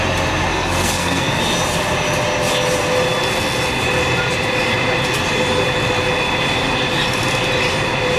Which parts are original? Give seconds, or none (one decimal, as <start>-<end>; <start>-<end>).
0.0-0.5; 1.4-8.2